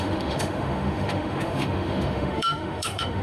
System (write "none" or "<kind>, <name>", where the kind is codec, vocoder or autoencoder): autoencoder, DAC-VAE